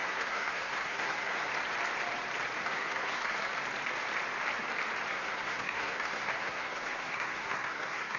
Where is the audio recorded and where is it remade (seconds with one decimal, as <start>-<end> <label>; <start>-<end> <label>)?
0.0-1.5 remade; 1.5-2.6 recorded; 2.6-3.5 remade; 3.5-5.1 recorded; 5.1-8.2 remade